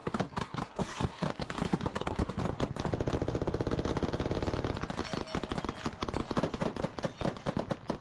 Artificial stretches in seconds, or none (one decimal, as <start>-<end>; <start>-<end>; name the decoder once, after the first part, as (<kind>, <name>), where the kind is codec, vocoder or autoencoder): 0.0-2.4 (codec, SNAC)